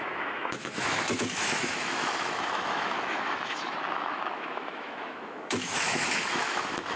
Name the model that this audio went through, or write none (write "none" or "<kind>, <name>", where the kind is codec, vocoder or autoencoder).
autoencoder, DAC-VAE